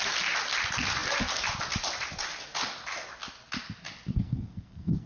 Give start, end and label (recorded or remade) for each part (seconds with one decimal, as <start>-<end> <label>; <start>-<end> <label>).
0.0-4.1 recorded; 4.1-5.1 remade